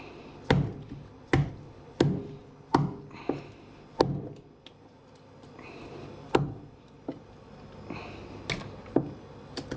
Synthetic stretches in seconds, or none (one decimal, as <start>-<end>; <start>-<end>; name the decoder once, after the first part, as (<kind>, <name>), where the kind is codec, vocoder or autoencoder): none